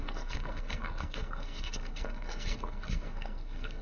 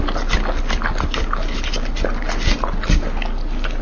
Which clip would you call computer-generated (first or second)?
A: first